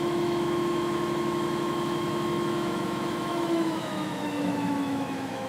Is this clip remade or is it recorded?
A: remade